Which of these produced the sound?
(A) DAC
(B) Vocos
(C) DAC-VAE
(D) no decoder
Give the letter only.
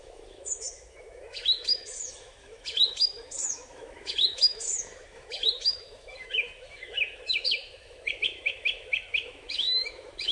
C